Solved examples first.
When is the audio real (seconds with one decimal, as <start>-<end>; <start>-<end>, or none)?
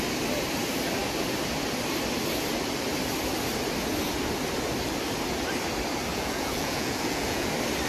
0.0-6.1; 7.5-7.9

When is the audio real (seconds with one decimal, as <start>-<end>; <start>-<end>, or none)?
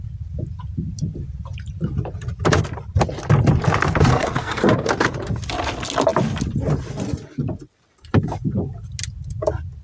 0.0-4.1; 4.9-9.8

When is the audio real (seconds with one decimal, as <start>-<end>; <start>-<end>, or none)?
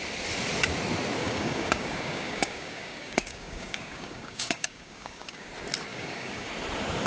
0.0-1.2; 5.5-5.9; 6.5-7.1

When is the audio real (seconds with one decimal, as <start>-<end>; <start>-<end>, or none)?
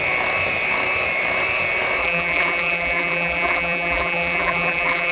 0.0-2.0